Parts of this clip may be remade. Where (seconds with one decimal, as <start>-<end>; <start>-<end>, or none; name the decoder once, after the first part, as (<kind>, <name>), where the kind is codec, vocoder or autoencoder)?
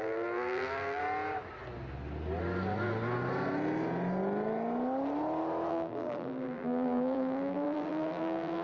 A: 0.0-1.0 (vocoder, BigVGAN v2); 5.7-8.6